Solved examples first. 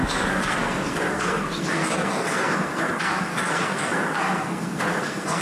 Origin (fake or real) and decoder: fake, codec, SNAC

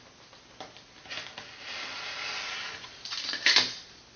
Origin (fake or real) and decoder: real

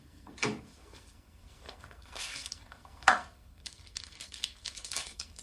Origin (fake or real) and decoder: fake, codec, SNAC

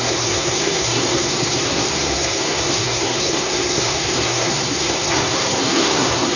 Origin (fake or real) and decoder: fake, codec, SNAC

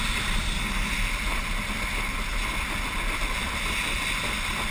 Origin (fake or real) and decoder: real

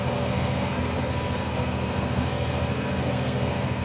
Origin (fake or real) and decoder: fake, codec, SNAC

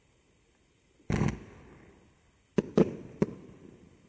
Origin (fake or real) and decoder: real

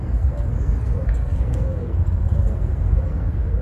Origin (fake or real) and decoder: fake, codec, SNAC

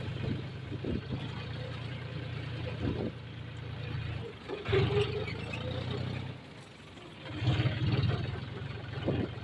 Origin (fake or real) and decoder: real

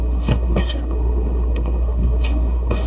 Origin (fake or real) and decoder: fake, codec, SNAC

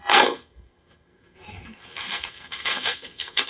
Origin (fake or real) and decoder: fake, codec, SNAC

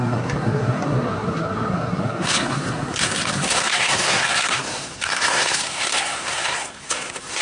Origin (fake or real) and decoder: fake, codec, SNAC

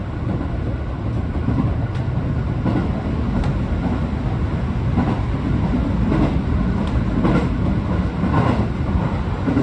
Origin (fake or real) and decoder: real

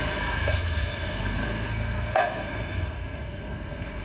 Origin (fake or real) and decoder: fake, codec, SNAC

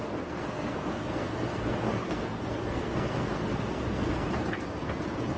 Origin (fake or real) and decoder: fake, codec, SNAC